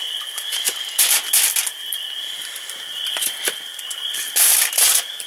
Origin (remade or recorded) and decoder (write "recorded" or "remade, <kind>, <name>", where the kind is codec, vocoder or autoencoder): recorded